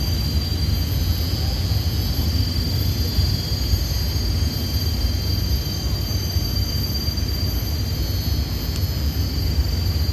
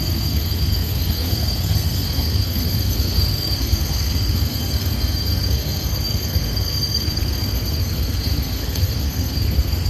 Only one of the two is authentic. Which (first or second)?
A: first